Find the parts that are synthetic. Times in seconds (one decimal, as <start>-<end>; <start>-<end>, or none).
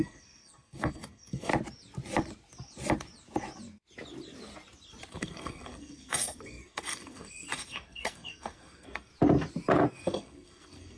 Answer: 0.0-1.5; 5.1-9.1; 9.9-11.0